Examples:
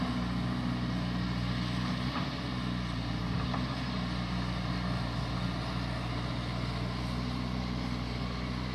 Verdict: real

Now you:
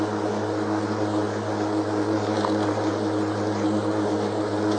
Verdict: real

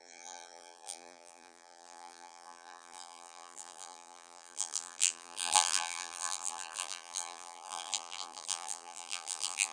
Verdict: fake